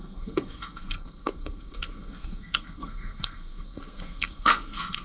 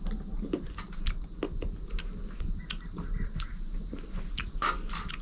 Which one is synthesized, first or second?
first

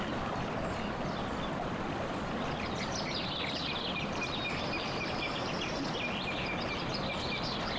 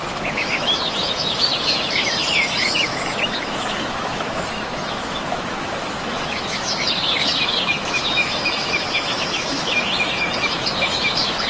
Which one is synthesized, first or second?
second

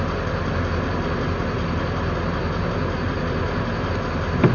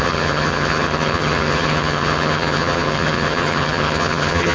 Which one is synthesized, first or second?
second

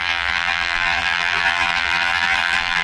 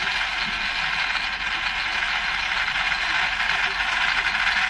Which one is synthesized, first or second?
first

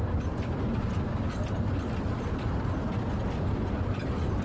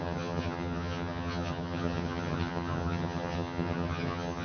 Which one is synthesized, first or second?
second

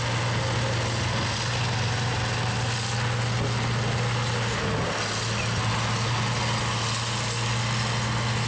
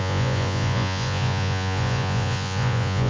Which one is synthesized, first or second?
second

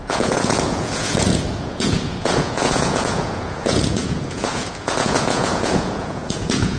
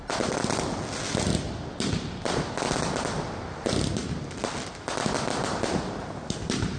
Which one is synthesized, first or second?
first